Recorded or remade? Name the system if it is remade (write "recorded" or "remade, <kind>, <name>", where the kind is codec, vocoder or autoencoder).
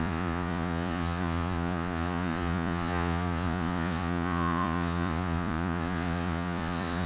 remade, vocoder, Vocos